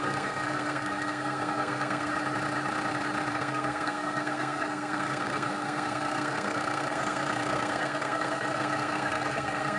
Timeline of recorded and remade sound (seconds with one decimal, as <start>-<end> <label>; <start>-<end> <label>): 0.0-2.1 remade; 2.1-3.3 recorded; 3.3-9.8 remade